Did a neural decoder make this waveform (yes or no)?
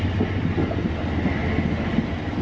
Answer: no